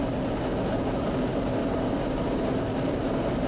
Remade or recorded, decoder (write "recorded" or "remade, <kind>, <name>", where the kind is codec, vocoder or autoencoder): recorded